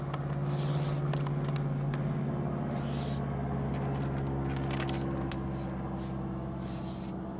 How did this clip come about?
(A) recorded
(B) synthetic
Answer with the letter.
A